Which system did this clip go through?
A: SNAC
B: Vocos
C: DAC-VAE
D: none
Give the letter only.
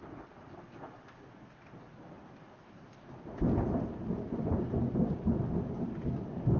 D